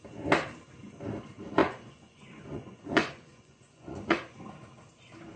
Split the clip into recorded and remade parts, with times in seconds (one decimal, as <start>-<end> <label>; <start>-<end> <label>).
0.0-1.6 recorded; 1.6-4.5 remade; 4.5-5.4 recorded